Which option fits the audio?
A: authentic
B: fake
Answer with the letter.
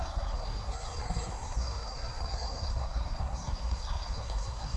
B